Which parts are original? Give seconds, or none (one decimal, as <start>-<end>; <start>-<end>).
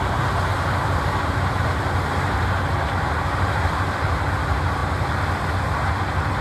0.0-0.5; 4.3-6.4